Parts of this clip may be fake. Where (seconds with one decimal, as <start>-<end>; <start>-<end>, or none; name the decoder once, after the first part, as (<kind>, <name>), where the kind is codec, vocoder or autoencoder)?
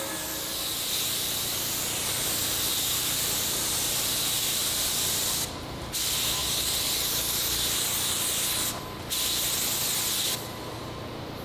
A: 2.7-5.9 (vocoder, BigVGAN v2)